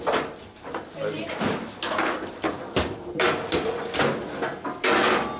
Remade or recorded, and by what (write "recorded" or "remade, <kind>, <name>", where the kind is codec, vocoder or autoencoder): remade, vocoder, BigVGAN v2